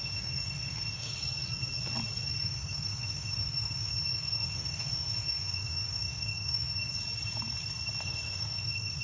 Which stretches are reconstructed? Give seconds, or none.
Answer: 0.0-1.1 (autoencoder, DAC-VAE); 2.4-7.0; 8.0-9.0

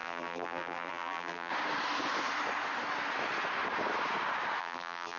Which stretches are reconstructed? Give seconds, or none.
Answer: 0.0-1.5 (vocoder, BigVGAN v2); 4.6-5.2

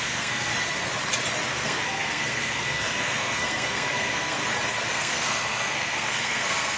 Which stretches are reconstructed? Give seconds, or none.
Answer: 0.0-0.5 (codec, SNAC); 1.5-4.4; 4.9-6.8

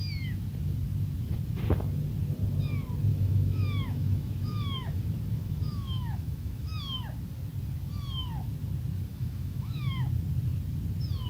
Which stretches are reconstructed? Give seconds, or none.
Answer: 3.1-5.0 (autoencoder, DAC-VAE); 5.4-6.8; 9.1-10.0

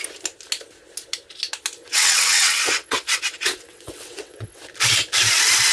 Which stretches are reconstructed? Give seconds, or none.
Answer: 1.8-4.6 (vocoder, WaveNeXt)

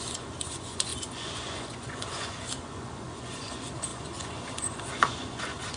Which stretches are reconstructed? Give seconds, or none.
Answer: 0.0-5.8 (vocoder, Vocos)